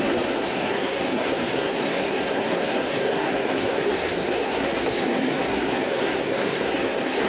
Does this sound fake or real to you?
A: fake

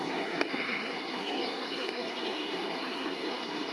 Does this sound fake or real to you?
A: fake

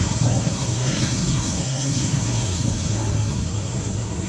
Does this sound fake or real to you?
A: fake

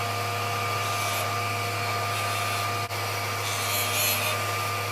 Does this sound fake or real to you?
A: real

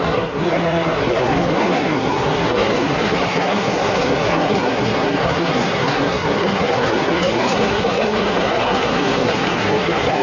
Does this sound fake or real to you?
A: fake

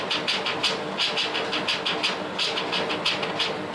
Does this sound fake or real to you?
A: real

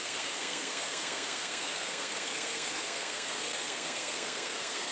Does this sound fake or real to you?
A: fake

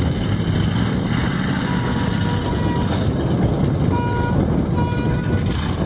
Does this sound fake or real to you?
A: real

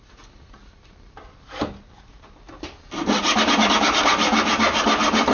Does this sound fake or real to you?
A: real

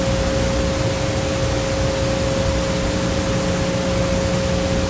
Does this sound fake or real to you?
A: real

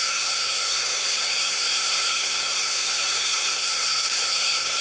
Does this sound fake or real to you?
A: fake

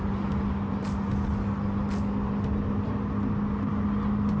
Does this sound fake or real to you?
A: real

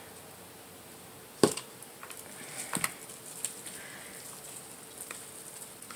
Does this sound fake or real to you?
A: real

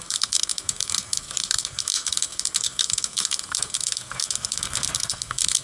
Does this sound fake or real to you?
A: fake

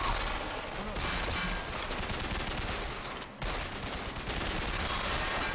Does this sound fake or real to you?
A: real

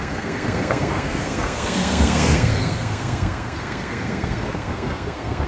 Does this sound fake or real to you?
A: fake